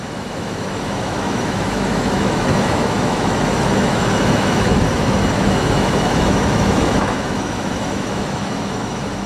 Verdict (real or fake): fake